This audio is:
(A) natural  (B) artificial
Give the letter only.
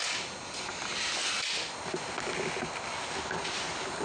A